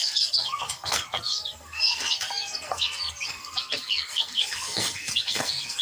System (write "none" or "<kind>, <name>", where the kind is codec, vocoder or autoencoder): codec, SNAC